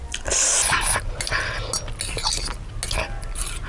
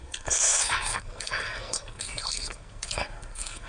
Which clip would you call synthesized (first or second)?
second